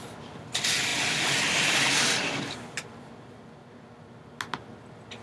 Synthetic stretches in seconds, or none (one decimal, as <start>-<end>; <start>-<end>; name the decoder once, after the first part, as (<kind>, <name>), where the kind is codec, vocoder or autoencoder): none